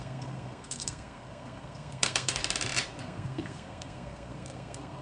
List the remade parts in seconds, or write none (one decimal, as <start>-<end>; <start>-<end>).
0.0-2.4; 3.0-5.0